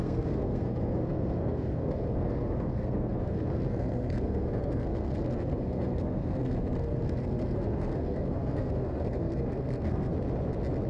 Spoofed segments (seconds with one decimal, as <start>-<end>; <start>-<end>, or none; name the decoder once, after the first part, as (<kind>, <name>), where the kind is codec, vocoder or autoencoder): 0.0-10.1 (codec, SNAC)